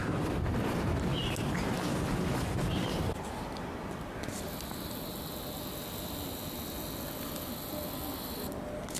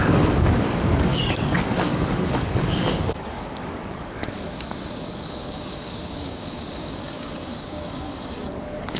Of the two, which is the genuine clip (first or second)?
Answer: first